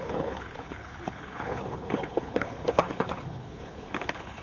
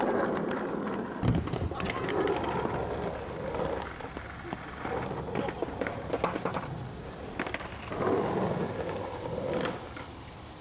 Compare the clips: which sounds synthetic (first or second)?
first